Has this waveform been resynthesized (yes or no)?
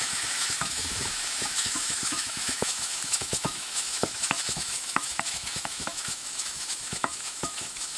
yes